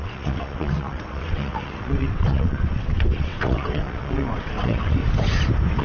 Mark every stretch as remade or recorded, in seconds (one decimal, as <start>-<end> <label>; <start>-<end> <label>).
0.0-5.0 remade; 5.0-5.8 recorded